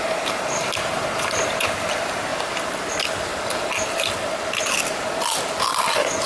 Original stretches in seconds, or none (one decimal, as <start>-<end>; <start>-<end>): 2.3-2.9; 3.3-5.6